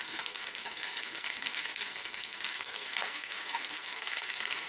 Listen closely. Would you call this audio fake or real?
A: fake